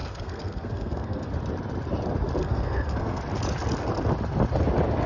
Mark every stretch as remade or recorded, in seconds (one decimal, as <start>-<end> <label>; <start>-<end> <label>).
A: 0.0-1.3 remade; 1.3-2.4 recorded; 2.4-3.2 remade; 3.2-5.1 recorded